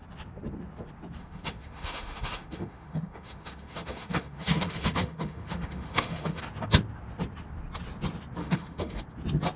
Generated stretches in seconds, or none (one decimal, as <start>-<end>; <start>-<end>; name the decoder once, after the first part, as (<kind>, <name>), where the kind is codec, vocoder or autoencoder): 1.2-6.4 (autoencoder, DAC-VAE); 8.4-9.0